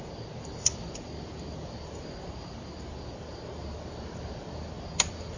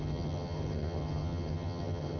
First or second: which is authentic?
first